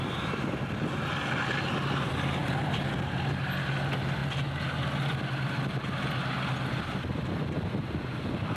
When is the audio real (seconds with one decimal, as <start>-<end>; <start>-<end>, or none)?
0.0-2.4; 3.0-6.7; 7.4-8.6